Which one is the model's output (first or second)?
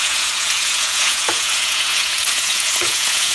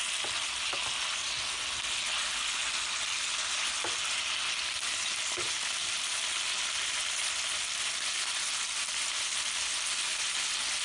first